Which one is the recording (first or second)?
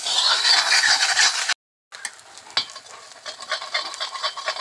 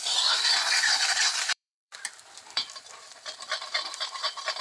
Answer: first